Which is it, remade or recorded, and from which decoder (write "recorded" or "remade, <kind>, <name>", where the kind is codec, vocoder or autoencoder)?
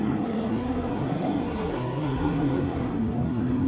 remade, codec, SNAC